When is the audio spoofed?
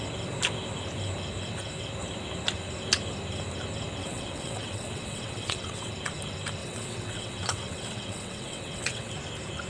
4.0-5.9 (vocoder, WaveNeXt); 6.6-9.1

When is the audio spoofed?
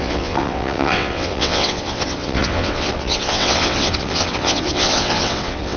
0.0-5.8 (vocoder, WaveNeXt)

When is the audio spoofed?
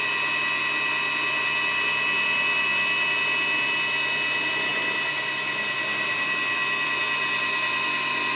none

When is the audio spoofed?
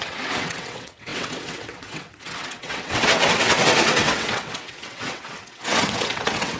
0.0-6.6 (vocoder, WaveNeXt)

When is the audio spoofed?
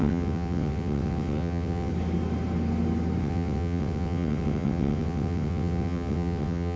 0.0-1.9 (vocoder, WaveNeXt); 3.2-6.8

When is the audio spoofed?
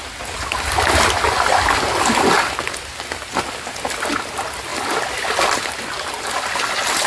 none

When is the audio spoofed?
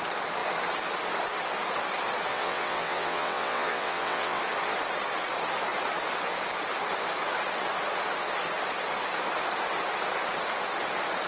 2.3-4.4 (vocoder, WaveNeXt)